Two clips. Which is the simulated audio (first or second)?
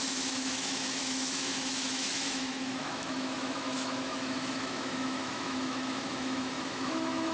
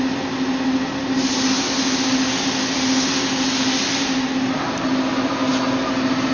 first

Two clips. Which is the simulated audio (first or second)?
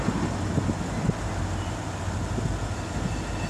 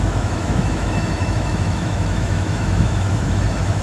second